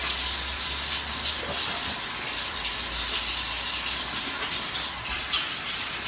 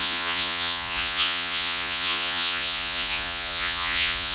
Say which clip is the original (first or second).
first